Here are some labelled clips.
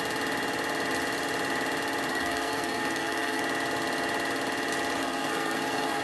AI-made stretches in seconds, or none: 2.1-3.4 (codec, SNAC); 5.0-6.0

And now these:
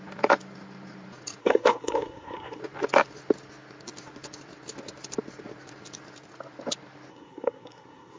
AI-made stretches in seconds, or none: 1.4-2.6 (codec, SNAC); 7.1-8.2

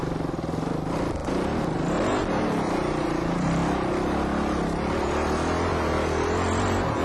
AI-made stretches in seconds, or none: none

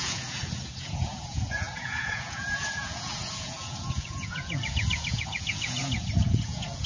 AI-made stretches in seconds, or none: 0.0-6.9 (vocoder, Vocos)